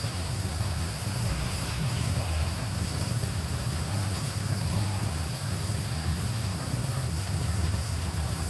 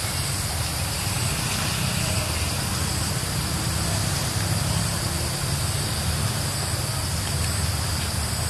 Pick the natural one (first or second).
second